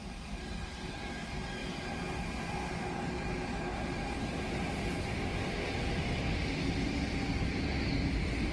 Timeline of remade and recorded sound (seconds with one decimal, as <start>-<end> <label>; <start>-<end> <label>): 0.0-8.5 recorded